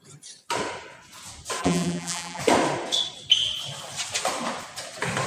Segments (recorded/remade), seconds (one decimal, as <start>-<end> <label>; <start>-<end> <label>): 0.0-1.6 recorded; 1.6-2.4 remade; 2.4-5.3 recorded